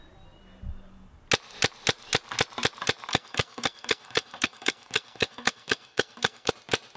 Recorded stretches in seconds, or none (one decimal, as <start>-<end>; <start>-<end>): 0.0-3.1; 6.5-7.0